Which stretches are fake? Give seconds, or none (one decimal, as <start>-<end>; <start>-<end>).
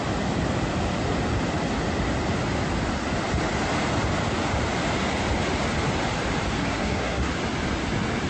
6.6-7.3